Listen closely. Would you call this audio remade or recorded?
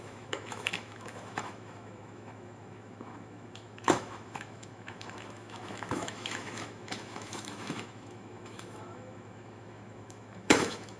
remade